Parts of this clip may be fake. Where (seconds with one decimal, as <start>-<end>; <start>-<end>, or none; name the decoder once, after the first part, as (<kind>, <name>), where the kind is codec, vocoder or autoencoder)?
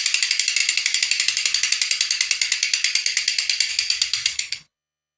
4.3-5.2 (codec, HILCodec)